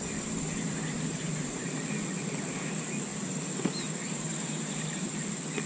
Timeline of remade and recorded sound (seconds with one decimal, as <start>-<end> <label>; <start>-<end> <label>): 0.0-1.8 remade; 1.8-3.1 recorded; 3.1-5.2 remade; 5.2-5.7 recorded